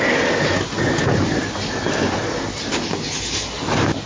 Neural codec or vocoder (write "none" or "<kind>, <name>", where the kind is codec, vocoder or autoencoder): none